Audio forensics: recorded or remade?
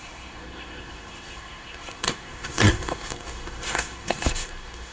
remade